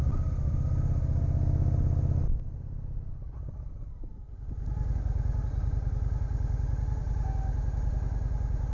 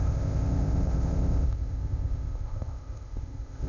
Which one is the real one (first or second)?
first